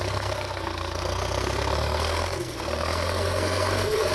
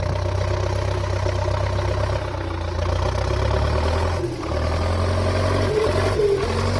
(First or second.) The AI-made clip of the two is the first